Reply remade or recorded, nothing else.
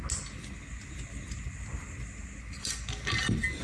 recorded